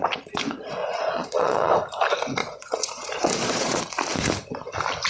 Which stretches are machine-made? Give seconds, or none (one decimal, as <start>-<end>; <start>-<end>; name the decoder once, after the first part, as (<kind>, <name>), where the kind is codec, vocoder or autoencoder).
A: 0.8-1.7 (vocoder, Vocos); 2.4-3.8